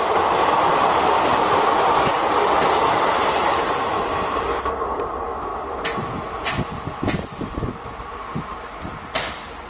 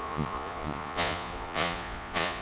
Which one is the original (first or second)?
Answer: first